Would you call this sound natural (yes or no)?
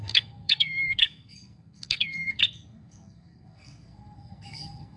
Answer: no